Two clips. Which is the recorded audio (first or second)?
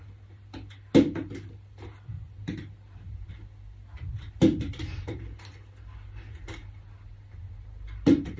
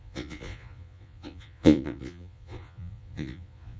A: first